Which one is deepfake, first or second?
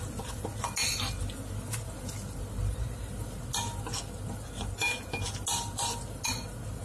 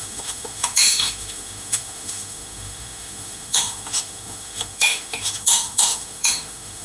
second